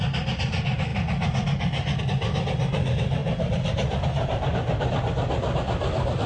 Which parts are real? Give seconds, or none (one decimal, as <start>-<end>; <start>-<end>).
0.0-3.2; 4.9-6.3